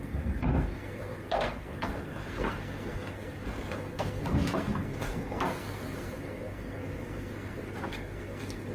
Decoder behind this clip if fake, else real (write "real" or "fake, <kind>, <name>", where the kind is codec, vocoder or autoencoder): fake, codec, SNAC